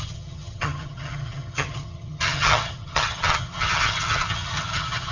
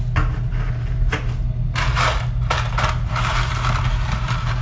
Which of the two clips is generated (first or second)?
first